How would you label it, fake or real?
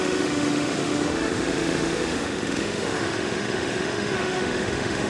fake